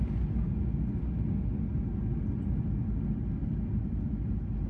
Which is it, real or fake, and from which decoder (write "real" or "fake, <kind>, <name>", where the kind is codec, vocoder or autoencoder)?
real